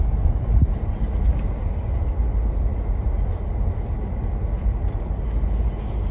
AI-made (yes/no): no